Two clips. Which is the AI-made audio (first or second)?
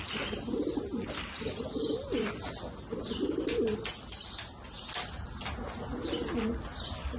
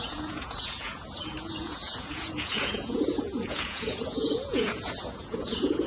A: second